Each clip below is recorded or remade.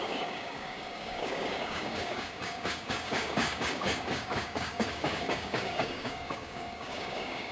remade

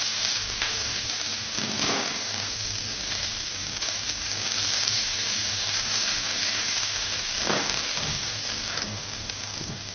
remade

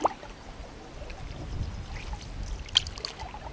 recorded